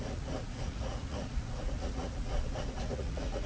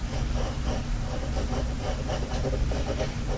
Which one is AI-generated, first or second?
first